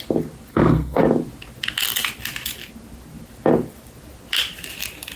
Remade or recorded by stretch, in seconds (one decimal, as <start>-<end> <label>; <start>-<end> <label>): 0.0-0.5 recorded; 0.5-1.0 remade; 1.0-5.2 recorded